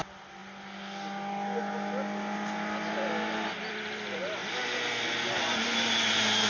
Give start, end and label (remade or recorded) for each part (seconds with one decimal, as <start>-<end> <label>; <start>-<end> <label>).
0.0-6.5 recorded